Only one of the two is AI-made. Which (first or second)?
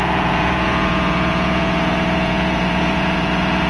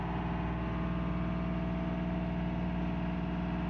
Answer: first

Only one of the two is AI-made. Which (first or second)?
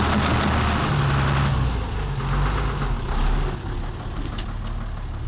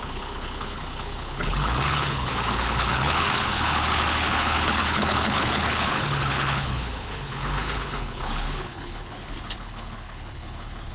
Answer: second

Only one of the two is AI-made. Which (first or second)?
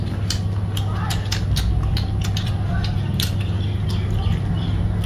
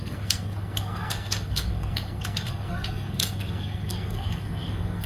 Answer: second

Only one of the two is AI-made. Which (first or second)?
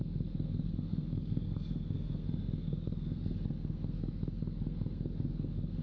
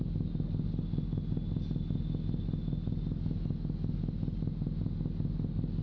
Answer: first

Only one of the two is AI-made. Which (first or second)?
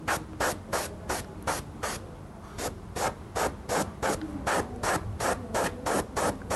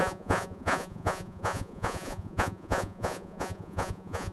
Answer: second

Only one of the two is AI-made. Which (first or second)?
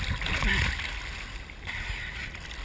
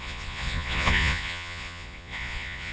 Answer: second